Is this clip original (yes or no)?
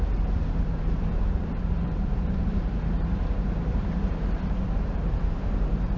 no